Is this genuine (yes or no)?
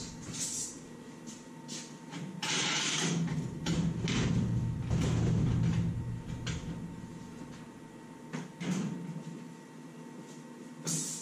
yes